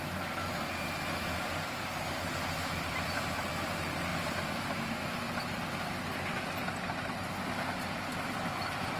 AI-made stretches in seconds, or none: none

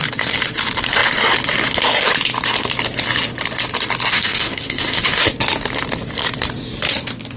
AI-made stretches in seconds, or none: 4.1-5.2 (autoencoder, DAC-VAE)

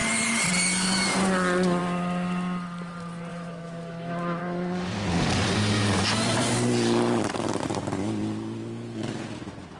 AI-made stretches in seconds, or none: 3.3-4.4 (autoencoder, DAC-VAE)

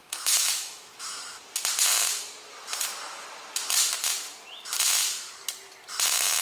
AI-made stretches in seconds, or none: 0.0-1.4 (autoencoder, DAC-VAE)

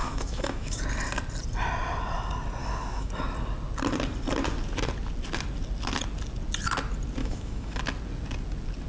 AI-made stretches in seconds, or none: 0.0-0.8 (autoencoder, DAC-VAE); 2.6-3.1; 7.2-7.8

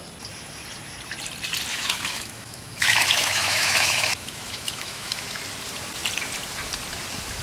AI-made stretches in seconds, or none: 1.7-5.4 (autoencoder, DAC-VAE)